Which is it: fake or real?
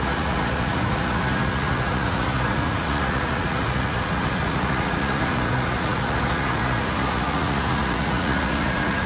fake